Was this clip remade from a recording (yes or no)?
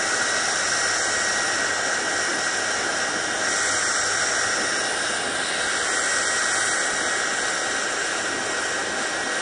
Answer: no